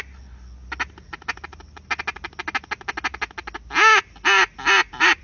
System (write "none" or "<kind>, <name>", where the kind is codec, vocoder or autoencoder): none